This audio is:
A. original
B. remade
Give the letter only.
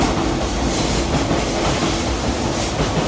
A